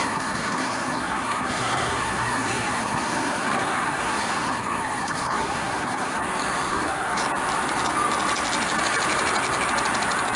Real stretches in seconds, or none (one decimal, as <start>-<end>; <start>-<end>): 6.2-6.7; 7.2-10.4